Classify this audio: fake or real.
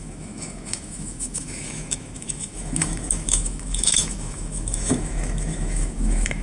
fake